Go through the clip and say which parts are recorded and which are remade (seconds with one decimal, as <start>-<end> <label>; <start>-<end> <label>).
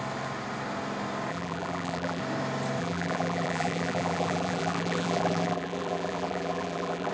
0.0-1.3 recorded; 1.3-2.2 remade; 2.2-2.8 recorded; 2.8-7.1 remade